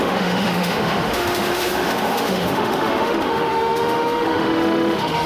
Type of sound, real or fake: fake